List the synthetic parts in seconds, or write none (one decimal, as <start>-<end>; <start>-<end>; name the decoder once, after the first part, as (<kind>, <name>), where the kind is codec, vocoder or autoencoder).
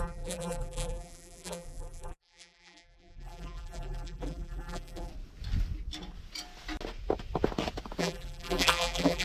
0.0-5.1 (vocoder, BigVGAN v2); 8.0-9.2